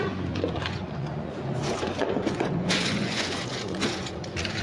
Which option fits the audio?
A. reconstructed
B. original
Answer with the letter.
A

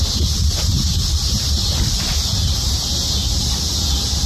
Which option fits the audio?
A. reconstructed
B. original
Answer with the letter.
B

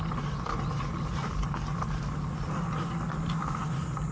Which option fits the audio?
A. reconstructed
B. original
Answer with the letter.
B